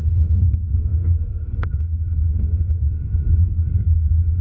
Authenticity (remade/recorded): remade